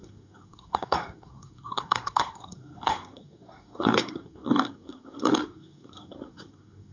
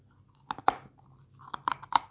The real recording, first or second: second